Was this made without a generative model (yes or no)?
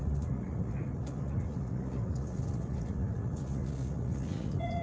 no